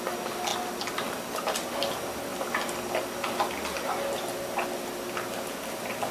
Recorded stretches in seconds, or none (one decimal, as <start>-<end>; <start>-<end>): 0.0-6.1